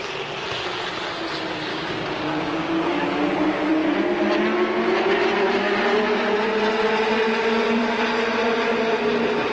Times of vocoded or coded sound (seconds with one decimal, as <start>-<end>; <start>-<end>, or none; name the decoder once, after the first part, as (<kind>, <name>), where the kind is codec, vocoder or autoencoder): 1.7-2.8 (codec, DAC)